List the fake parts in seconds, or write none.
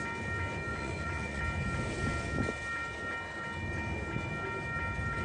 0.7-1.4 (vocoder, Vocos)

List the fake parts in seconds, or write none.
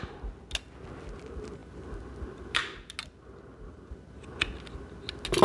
none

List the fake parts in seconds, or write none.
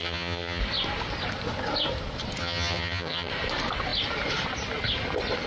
0.0-0.6 (vocoder, HiFi-GAN); 2.4-3.3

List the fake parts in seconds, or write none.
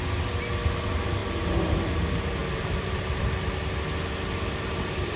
2.4-3.2 (vocoder, BigVGAN v2)